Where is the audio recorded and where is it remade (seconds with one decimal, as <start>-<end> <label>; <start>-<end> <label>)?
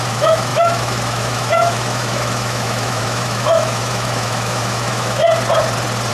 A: 0.0-5.2 remade; 5.2-6.1 recorded